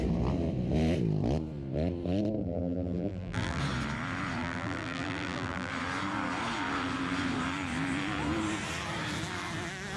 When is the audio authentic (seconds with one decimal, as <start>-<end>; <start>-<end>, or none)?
0.0-2.4; 3.6-4.4; 5.7-10.0